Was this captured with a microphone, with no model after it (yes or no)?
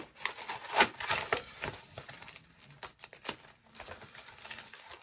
yes